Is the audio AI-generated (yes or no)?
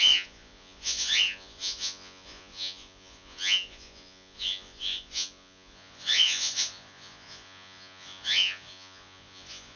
yes